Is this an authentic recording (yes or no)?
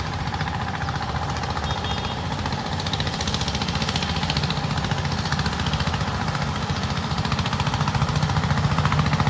no